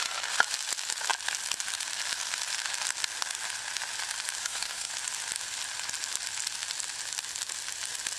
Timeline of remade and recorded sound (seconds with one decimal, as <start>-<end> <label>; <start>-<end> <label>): 0.0-4.4 recorded; 4.4-4.9 remade; 4.9-8.2 recorded